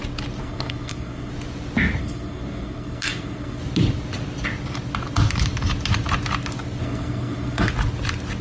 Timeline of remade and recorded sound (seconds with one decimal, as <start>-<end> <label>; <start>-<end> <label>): 0.0-0.4 recorded; 0.4-1.3 remade; 1.3-2.0 recorded; 2.0-3.6 remade; 3.6-6.8 recorded; 6.8-7.7 remade; 7.7-8.4 recorded